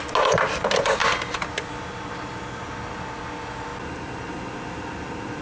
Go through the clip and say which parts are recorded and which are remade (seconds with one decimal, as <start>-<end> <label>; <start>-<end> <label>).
0.0-5.4 recorded